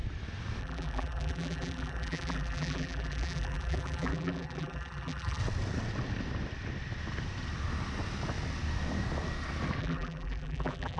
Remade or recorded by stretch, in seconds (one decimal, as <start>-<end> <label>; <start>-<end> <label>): 0.0-0.6 recorded; 0.6-5.4 remade; 5.4-9.8 recorded; 9.8-11.0 remade